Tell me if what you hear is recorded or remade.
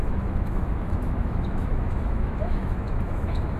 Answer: remade